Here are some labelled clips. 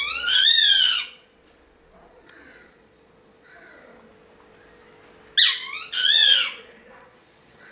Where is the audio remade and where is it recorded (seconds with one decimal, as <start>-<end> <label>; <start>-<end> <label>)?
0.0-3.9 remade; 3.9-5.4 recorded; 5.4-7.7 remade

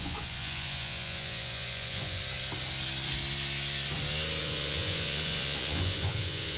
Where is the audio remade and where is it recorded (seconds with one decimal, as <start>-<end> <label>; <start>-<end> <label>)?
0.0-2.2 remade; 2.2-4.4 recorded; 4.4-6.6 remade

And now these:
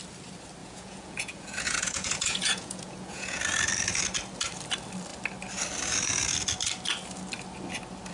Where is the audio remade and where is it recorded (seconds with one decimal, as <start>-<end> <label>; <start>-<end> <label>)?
0.0-0.6 recorded; 0.6-3.4 remade; 3.4-8.1 recorded

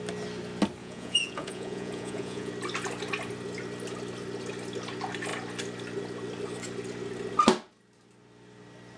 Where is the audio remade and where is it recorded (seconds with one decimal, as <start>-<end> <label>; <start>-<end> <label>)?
0.0-0.8 recorded; 0.8-2.5 remade; 2.5-9.0 recorded

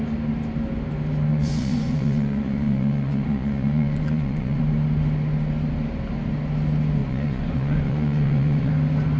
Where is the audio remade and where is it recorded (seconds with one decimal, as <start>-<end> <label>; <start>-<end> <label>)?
0.0-1.3 recorded; 1.3-4.6 remade; 4.6-7.0 recorded; 7.0-8.7 remade; 8.7-9.2 recorded